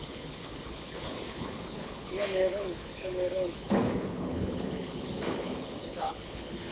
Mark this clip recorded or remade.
remade